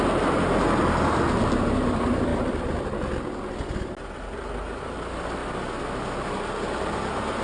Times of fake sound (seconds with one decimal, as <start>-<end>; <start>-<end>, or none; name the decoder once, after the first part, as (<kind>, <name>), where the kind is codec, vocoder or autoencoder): 2.3-3.1 (vocoder, BigVGAN v2)